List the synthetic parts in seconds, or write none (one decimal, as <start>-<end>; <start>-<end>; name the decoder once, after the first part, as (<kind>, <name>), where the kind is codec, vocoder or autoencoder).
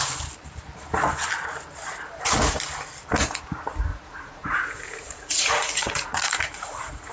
3.9-7.1 (vocoder, Vocos)